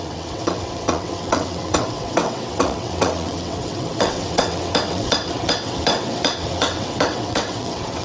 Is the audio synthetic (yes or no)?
yes